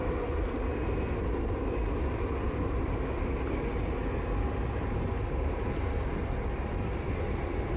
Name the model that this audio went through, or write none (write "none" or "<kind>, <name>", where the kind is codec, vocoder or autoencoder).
none